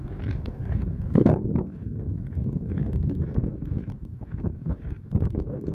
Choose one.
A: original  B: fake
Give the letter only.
B